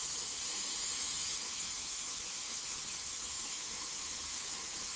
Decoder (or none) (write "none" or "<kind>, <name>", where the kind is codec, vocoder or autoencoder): autoencoder, DAC-VAE